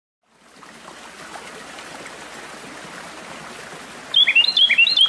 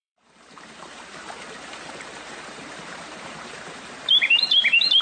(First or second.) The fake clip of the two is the second